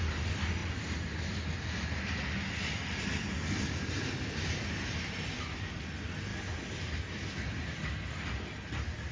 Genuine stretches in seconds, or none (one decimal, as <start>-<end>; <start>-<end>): 0.0-9.1